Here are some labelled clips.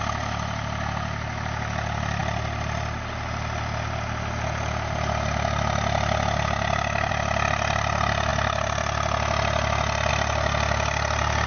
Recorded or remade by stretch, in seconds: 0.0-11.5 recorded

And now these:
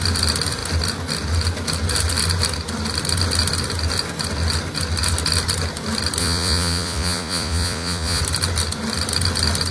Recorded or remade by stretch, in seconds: 0.0-6.2 recorded; 6.2-8.2 remade; 8.2-9.7 recorded

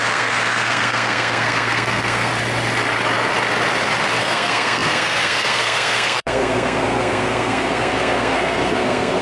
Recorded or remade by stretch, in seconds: 0.0-2.3 remade; 2.3-4.2 recorded; 4.2-9.2 remade

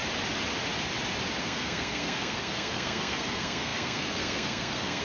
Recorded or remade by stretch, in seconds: 0.0-1.4 recorded; 1.4-5.0 remade